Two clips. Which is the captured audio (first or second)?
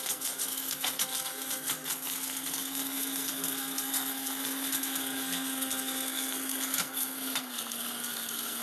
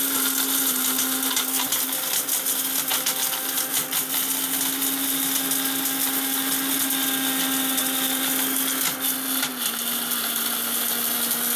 second